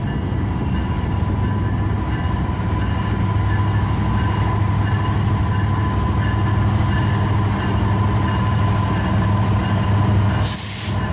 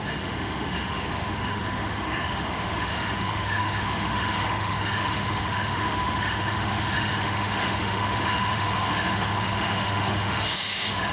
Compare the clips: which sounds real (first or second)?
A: first